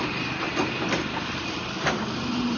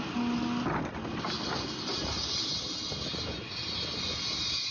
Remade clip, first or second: first